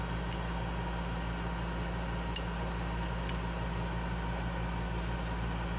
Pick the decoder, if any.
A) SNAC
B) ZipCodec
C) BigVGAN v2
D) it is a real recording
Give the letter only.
D